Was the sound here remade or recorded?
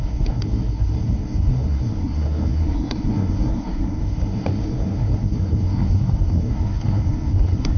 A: remade